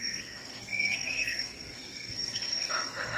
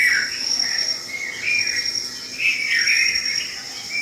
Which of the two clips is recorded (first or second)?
second